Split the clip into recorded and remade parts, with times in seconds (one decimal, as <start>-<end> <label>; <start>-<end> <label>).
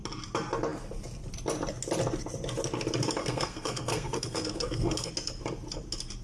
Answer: 0.0-3.2 recorded; 3.2-5.1 remade; 5.1-6.2 recorded